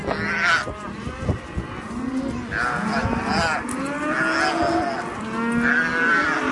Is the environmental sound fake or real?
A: real